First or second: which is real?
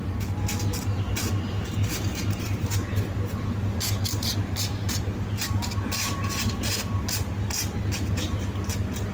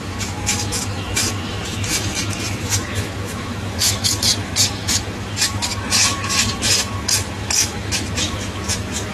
first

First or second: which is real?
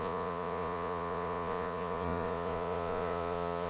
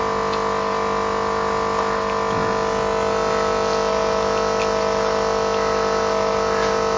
second